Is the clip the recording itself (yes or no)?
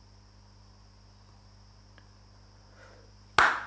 yes